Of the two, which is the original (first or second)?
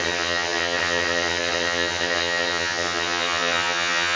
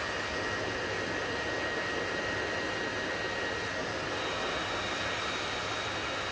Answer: second